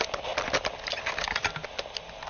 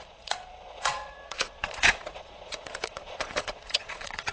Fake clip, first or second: second